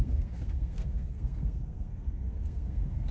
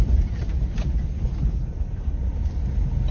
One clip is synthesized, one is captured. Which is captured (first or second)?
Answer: second